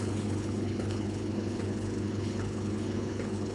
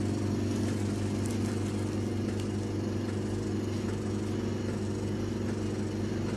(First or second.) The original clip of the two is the second